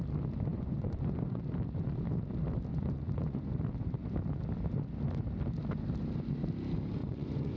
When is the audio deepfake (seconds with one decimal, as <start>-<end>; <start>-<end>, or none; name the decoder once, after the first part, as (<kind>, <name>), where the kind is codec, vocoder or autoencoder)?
0.5-1.4 (vocoder, Vocos); 2.7-3.5; 7.0-7.6